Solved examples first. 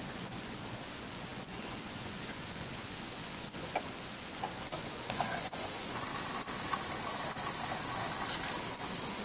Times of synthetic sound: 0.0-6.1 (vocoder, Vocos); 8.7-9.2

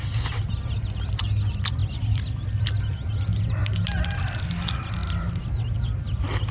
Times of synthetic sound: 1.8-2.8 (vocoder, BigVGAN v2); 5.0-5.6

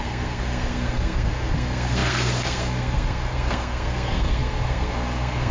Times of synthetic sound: 0.0-5.5 (codec, SNAC)

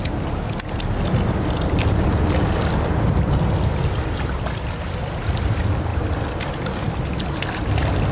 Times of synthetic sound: none

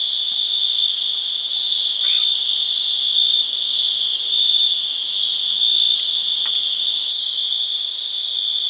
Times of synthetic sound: none